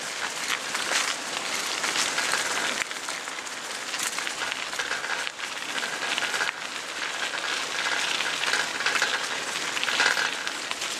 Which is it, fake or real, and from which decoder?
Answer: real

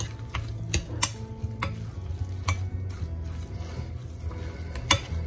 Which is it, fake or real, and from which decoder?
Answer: real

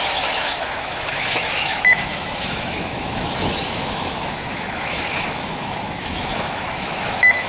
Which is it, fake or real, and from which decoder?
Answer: fake, autoencoder, DAC-VAE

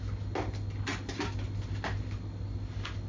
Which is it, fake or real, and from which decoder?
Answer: real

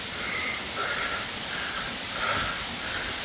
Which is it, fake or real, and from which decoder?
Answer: real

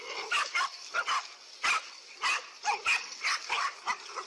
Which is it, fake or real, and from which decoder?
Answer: real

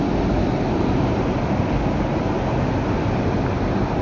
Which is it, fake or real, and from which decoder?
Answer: real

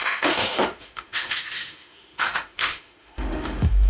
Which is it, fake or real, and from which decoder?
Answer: fake, autoencoder, DAC-VAE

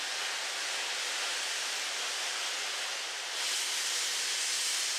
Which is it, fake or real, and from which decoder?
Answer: real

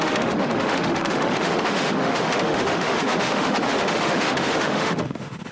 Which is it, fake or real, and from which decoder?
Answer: fake, autoencoder, DAC-VAE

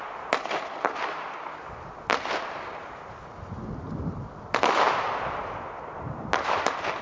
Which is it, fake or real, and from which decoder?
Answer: real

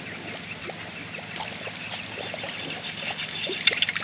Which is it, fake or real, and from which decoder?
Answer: real